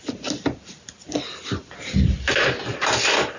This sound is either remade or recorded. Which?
recorded